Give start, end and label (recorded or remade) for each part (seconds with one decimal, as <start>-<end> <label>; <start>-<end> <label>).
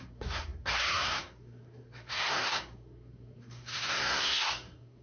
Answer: 0.0-5.0 remade